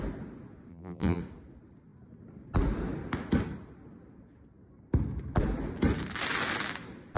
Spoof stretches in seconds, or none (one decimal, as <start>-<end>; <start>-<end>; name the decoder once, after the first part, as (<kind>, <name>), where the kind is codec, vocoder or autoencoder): 0.7-1.2 (vocoder, BigVGAN v2)